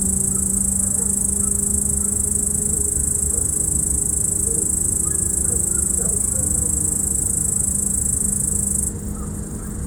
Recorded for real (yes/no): yes